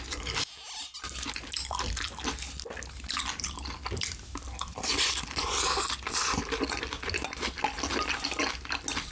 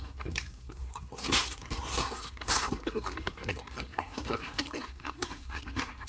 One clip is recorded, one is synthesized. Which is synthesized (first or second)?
second